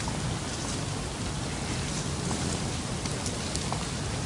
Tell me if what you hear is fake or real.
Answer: real